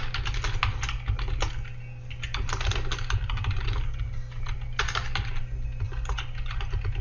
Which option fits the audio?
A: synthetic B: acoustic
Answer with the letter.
B